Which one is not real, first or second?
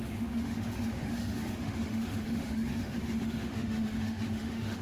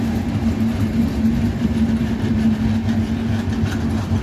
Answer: first